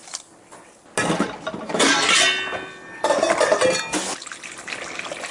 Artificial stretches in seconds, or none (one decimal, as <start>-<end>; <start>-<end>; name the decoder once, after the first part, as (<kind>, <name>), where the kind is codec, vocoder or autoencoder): none